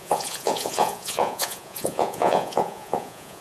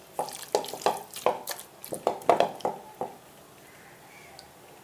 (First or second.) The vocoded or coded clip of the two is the first